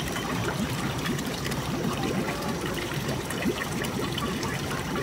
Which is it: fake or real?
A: fake